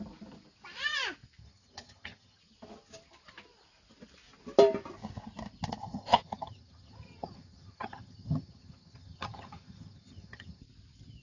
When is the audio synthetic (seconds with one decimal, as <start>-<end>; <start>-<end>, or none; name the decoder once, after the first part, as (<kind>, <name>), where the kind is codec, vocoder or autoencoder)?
1.4-2.4 (vocoder, HiFi-GAN); 5.8-10.6